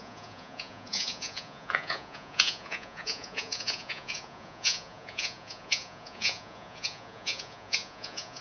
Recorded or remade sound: remade